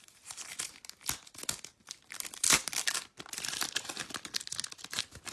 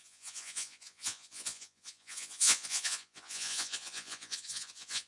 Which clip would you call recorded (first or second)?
first